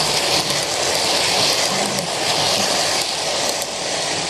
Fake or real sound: real